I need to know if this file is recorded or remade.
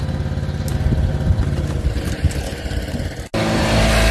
recorded